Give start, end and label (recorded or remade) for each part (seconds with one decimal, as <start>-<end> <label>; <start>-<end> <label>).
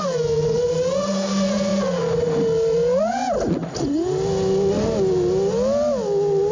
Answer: 0.0-6.5 recorded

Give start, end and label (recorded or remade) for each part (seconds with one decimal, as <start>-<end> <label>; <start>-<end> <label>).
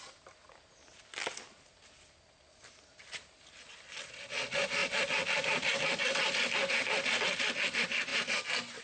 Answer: 0.0-8.8 recorded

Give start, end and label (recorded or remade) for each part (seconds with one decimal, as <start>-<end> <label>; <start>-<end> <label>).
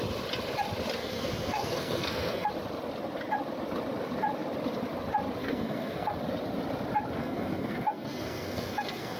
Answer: 0.0-1.0 recorded; 1.0-2.5 remade; 2.5-5.4 recorded; 5.4-6.2 remade; 6.2-7.2 recorded; 7.2-9.2 remade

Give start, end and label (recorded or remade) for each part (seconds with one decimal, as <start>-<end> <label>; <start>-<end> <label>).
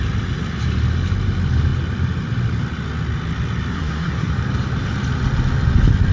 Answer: 0.0-3.7 recorded; 3.7-4.3 remade; 4.3-6.1 recorded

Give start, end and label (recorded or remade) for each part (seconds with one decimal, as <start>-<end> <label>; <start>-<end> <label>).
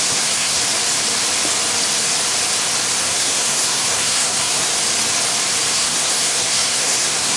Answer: 0.0-0.6 remade; 0.6-3.0 recorded; 3.0-4.7 remade; 4.7-5.7 recorded; 5.7-7.4 remade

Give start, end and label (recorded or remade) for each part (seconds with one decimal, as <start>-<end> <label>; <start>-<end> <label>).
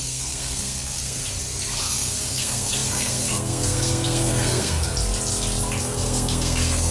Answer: 0.0-1.2 remade; 1.2-1.8 recorded; 1.8-4.9 remade; 4.9-5.8 recorded; 5.8-6.9 remade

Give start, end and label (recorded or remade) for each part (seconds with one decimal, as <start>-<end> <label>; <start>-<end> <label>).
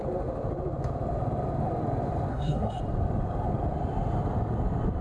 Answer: 0.0-2.3 recorded; 2.3-2.8 remade; 2.8-5.0 recorded